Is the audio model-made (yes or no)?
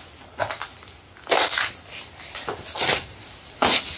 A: no